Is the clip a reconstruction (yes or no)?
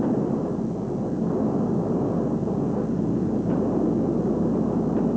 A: no